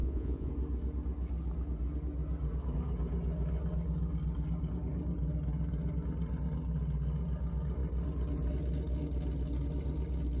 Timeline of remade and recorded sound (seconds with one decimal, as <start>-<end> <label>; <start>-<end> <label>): 0.0-0.5 remade; 0.5-10.4 recorded